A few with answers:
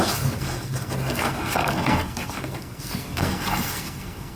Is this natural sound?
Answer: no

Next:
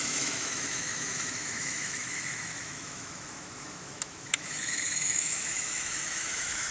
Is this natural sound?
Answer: no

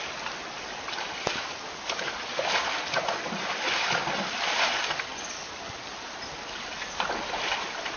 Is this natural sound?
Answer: yes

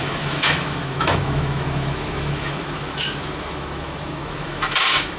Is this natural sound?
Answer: no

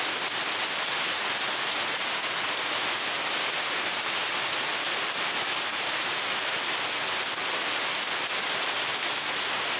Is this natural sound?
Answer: yes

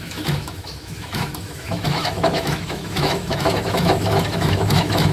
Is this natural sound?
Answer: no